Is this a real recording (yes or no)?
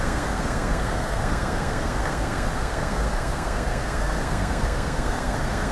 no